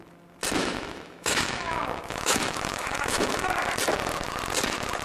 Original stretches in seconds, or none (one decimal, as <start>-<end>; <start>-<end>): 0.0-0.6; 3.5-5.0